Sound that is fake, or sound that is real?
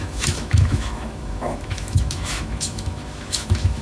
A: fake